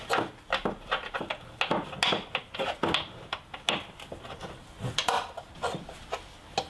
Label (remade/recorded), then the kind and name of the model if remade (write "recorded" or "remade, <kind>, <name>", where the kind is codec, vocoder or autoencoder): recorded